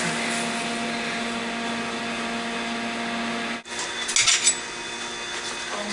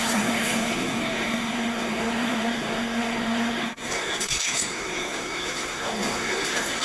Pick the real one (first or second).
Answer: first